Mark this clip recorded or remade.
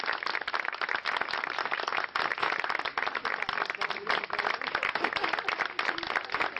recorded